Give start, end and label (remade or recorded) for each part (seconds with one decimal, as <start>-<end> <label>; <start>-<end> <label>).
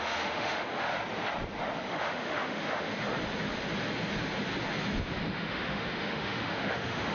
0.0-0.9 remade; 0.9-1.9 recorded; 1.9-2.9 remade; 2.9-5.3 recorded; 5.3-7.1 remade